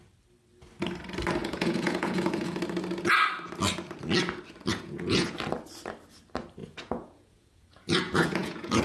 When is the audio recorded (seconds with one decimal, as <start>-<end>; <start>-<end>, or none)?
0.0-1.4; 2.6-4.7; 5.3-6.6